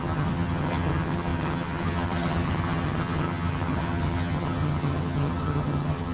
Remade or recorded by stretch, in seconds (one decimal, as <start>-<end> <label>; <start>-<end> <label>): 0.0-6.1 remade